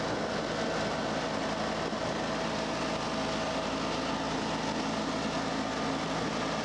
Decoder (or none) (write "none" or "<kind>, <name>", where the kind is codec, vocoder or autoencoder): none